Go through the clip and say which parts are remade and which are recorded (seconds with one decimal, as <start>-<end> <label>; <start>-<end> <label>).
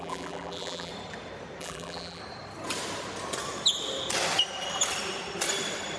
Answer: 0.0-0.9 remade; 0.9-1.6 recorded; 1.6-2.2 remade; 2.2-6.0 recorded